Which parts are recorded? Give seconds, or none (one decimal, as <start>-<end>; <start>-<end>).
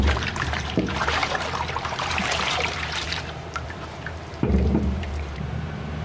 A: none